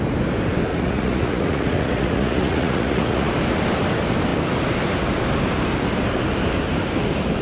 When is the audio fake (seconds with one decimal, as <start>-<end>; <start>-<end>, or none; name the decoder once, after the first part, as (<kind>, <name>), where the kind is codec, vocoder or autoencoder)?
0.7-3.3 (vocoder, Vocos)